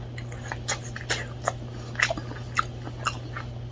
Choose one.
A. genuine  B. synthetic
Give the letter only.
A